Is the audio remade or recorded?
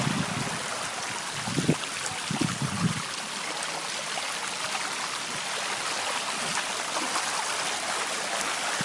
recorded